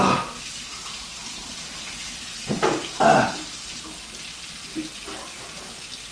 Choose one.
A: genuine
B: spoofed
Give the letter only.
A